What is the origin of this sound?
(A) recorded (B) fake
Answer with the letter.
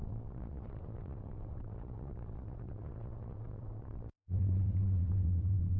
B